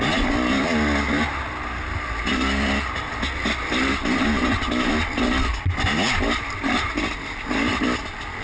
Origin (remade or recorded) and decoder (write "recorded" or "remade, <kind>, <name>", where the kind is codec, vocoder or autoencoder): recorded